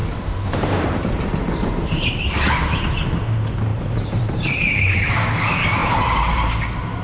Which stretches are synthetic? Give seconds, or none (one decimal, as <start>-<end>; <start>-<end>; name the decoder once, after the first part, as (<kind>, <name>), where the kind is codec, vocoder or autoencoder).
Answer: 0.0-2.1 (vocoder, BigVGAN v2); 3.7-5.2; 5.8-6.5